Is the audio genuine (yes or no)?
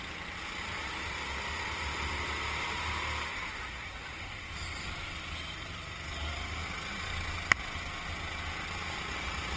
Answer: yes